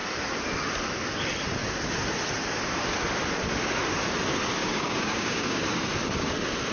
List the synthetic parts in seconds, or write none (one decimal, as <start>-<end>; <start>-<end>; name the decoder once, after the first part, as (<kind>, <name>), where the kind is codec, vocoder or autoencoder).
4.6-5.6 (codec, DAC)